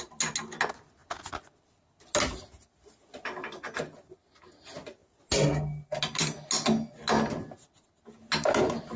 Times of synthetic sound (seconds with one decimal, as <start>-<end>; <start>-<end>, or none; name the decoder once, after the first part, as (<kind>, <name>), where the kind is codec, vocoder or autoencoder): none